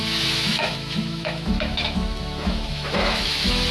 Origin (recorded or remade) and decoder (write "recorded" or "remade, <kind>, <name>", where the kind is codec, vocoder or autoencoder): remade, autoencoder, DAC-VAE